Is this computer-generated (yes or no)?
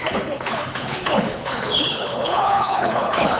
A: yes